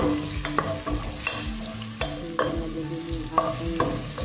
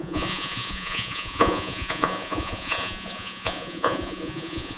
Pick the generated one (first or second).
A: second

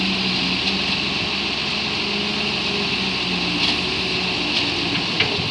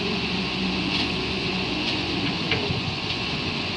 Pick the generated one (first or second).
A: second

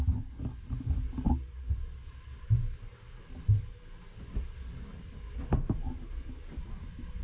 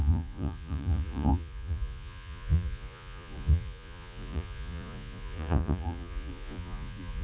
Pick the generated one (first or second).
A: second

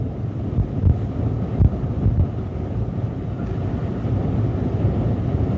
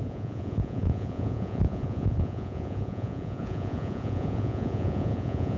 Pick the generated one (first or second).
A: second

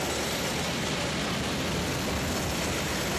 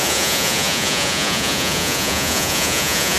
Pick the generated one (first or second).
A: second